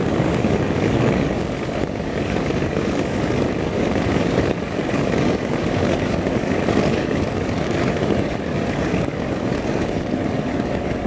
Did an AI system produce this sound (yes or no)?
yes